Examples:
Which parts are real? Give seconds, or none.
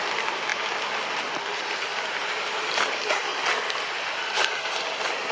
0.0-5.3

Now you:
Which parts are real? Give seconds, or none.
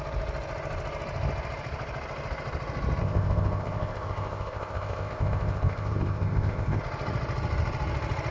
0.0-3.0; 6.8-8.3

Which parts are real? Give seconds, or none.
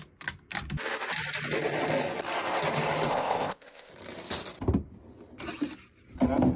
0.0-3.1; 3.9-6.6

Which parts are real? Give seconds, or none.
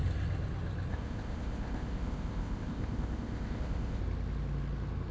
0.0-0.9; 4.0-5.1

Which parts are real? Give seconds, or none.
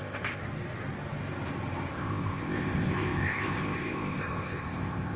0.4-1.9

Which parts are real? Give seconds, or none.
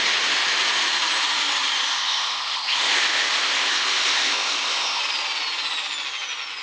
0.0-1.9; 5.0-6.6